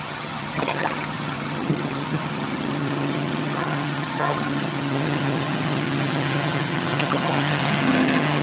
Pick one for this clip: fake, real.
fake